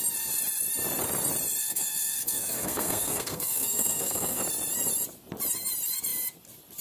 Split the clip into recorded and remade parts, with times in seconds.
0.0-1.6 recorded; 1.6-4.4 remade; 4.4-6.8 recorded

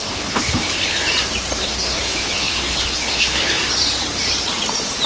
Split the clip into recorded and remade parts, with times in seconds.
0.0-1.0 remade; 1.0-1.6 recorded; 1.6-3.6 remade; 3.6-5.1 recorded

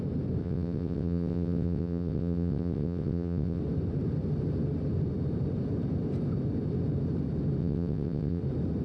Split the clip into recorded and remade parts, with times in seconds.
0.0-0.4 recorded; 0.4-3.6 remade; 3.6-7.6 recorded; 7.6-8.4 remade; 8.4-8.8 recorded

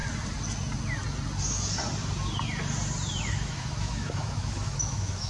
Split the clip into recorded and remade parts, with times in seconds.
0.0-3.2 recorded; 3.2-5.3 remade